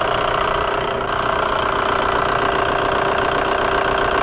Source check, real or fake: real